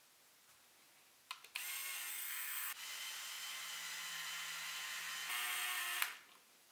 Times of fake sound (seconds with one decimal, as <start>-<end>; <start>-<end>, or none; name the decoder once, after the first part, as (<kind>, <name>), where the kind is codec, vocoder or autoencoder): 2.1-2.7 (codec, SNAC)